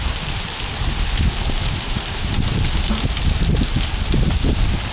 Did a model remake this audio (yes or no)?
no